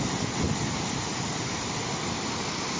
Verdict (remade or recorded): recorded